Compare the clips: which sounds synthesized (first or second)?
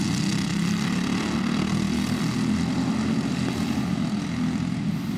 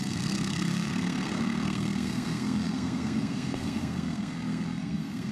second